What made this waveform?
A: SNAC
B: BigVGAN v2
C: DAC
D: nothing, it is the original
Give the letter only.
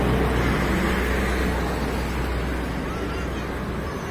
D